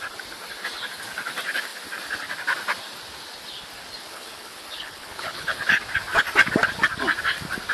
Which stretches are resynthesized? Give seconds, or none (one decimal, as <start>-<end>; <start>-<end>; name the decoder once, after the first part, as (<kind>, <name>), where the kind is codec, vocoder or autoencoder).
4.0-5.6 (codec, HILCodec)